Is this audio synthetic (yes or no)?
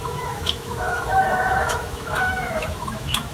yes